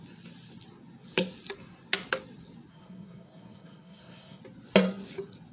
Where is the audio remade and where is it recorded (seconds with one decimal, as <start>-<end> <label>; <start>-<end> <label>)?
0.0-2.7 recorded; 2.7-4.4 remade; 4.4-5.5 recorded